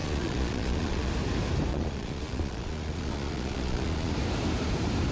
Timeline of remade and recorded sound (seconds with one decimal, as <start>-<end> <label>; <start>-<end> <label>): 0.0-1.1 remade; 1.1-1.7 recorded; 1.7-4.1 remade; 4.1-5.1 recorded